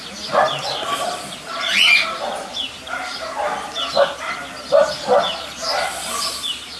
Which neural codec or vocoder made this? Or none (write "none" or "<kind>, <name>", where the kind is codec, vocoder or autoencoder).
none